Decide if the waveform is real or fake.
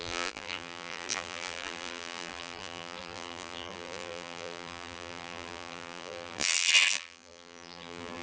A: fake